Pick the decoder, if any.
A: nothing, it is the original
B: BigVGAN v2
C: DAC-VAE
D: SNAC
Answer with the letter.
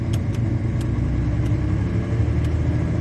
A